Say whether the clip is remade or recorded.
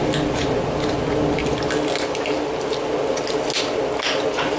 recorded